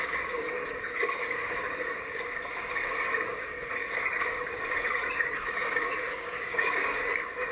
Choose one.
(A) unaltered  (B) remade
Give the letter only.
B